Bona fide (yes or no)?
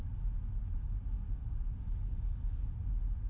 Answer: yes